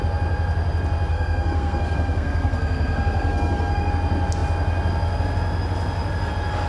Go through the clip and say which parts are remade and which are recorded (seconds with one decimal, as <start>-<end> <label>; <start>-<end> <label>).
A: 0.0-1.1 recorded; 1.1-3.9 remade; 3.9-6.7 recorded